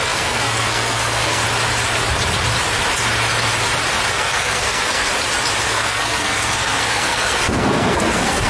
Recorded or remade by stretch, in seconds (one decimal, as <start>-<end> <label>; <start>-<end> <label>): 0.0-1.4 remade; 1.4-4.1 recorded; 4.1-5.1 remade; 5.1-5.6 recorded; 5.6-8.5 remade